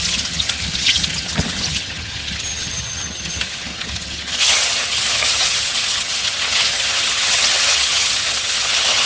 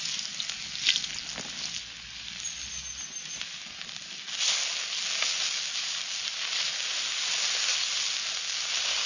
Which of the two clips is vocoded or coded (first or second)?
first